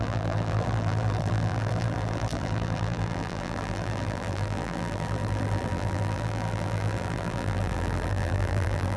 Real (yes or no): no